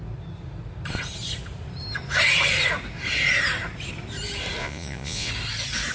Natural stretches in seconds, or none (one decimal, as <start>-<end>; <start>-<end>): 0.0-4.6; 5.3-5.9